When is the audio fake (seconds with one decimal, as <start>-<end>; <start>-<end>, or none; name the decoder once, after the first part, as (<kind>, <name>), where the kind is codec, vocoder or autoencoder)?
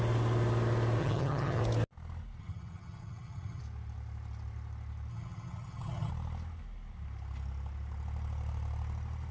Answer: 1.0-1.6 (vocoder, HiFi-GAN); 2.4-3.6; 5.1-6.1